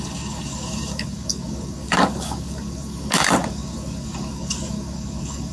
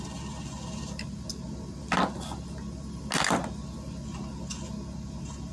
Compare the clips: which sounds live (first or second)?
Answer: second